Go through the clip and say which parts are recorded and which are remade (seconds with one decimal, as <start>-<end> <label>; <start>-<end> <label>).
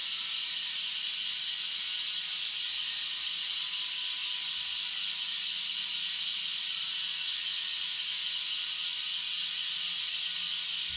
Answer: 0.0-11.0 recorded